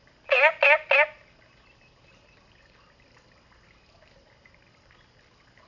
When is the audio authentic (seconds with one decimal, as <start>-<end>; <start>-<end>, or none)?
0.0-5.7